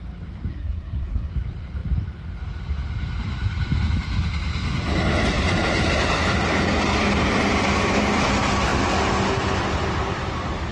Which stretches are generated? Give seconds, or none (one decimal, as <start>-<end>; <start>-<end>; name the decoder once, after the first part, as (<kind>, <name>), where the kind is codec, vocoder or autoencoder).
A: 0.5-1.3 (codec, SNAC)